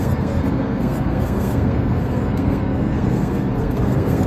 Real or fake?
fake